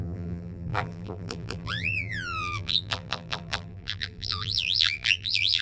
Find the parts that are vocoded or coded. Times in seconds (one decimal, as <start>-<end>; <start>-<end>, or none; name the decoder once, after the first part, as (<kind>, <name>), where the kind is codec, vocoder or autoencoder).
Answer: 0.0-5.6 (vocoder, BigVGAN v2)